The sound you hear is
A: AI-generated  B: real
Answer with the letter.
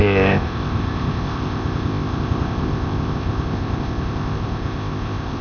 A